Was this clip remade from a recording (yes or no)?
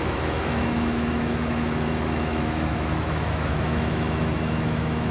yes